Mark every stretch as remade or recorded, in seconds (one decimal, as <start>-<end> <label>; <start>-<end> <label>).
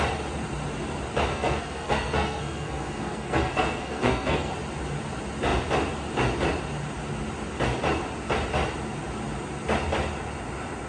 0.0-1.3 recorded; 1.3-4.5 remade; 4.5-10.9 recorded